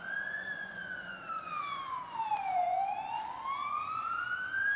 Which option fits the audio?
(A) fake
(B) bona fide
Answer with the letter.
A